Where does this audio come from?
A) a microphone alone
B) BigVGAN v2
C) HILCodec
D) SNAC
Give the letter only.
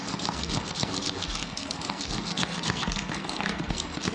D